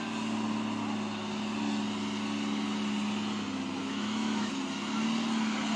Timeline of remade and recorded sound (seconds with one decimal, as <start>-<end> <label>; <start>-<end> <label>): 0.0-3.8 recorded; 3.8-4.5 remade; 4.5-5.8 recorded